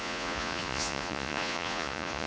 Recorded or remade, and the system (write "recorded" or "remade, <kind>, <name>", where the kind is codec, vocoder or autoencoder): remade, vocoder, Vocos